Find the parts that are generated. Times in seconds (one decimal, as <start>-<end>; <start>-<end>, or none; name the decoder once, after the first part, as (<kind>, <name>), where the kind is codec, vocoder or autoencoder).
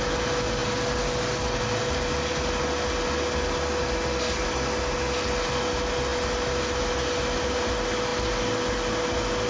none